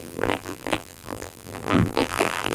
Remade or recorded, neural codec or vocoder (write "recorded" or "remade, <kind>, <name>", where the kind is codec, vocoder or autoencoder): remade, vocoder, BigVGAN v2